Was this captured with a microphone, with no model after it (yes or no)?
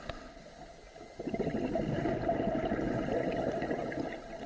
yes